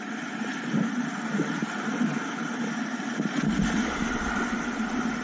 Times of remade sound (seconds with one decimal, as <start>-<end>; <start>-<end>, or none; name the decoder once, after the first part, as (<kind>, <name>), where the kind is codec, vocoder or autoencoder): none